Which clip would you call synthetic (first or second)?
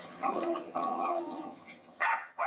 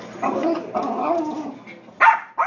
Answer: first